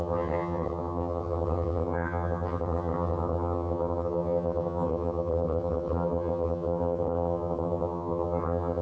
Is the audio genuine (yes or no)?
no